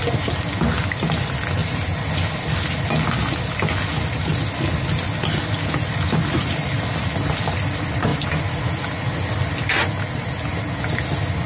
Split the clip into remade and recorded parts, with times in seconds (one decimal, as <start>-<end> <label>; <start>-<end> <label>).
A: 0.0-1.6 recorded; 1.6-2.1 remade; 2.1-6.2 recorded; 6.2-6.8 remade; 6.8-8.1 recorded; 8.1-8.6 remade; 8.6-11.5 recorded